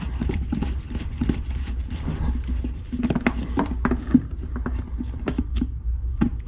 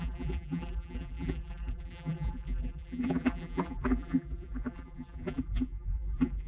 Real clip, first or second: first